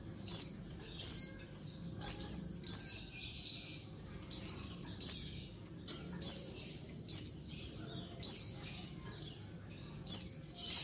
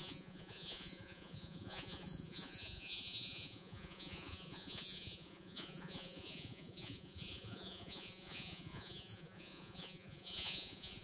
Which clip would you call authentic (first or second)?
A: first